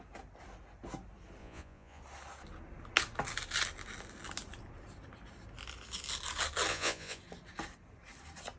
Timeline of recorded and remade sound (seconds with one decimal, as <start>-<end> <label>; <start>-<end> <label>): 0.0-1.4 recorded; 1.4-2.0 remade; 2.0-6.7 recorded; 6.7-7.2 remade; 7.2-8.6 recorded